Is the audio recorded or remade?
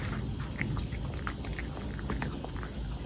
recorded